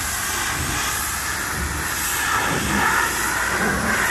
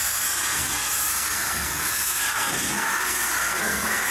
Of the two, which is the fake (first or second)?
second